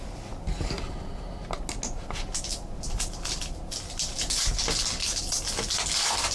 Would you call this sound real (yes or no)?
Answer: yes